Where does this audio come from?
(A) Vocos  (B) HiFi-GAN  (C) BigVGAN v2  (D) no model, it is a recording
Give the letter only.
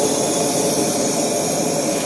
D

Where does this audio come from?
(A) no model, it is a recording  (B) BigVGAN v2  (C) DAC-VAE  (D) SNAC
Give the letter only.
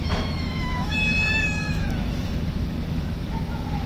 C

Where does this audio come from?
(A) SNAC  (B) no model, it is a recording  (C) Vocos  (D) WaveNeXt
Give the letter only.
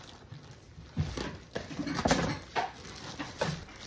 B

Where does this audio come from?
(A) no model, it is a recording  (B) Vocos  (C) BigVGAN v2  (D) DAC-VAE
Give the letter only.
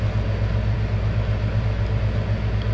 A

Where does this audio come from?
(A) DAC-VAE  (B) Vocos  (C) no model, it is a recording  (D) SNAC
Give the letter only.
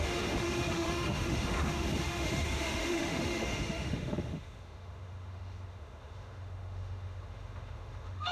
A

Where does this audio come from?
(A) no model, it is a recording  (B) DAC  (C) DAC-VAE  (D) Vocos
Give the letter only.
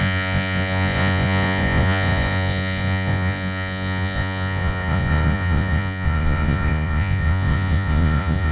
D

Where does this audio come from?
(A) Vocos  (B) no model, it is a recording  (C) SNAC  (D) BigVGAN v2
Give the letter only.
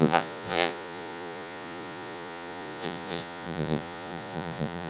A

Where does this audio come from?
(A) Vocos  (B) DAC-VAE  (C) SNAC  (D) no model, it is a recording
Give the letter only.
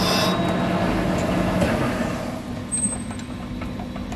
D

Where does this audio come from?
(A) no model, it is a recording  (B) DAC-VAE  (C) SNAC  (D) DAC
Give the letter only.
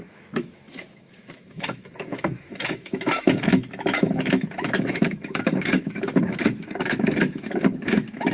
B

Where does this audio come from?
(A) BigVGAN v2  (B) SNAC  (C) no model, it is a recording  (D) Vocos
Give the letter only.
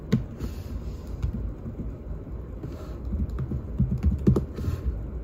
C